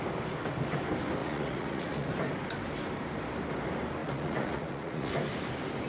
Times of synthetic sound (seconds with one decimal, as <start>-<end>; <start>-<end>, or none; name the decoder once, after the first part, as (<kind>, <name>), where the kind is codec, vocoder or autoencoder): 1.2-2.1 (vocoder, Vocos); 4.0-5.1